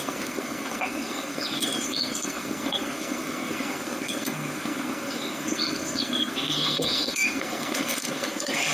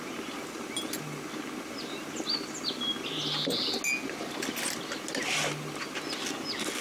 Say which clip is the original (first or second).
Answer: second